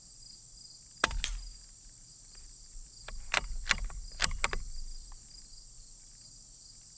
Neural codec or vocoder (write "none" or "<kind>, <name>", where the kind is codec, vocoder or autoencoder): none